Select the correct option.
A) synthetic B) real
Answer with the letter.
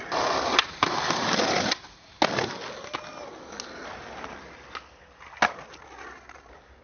B